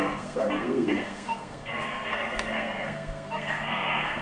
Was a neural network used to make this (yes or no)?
yes